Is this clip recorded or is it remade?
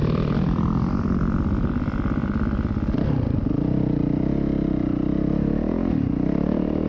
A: remade